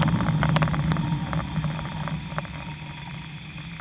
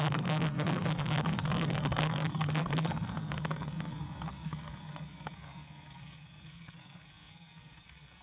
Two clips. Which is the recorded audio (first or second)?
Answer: first